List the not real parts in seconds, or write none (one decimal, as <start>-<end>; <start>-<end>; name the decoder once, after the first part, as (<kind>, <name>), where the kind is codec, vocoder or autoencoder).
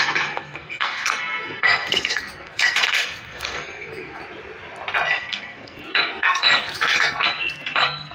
0.0-4.2 (codec, SNAC); 5.1-8.1